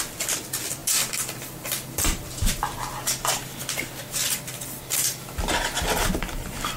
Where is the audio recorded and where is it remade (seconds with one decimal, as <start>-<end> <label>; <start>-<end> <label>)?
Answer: 0.0-0.8 recorded; 0.8-4.8 remade; 4.8-6.8 recorded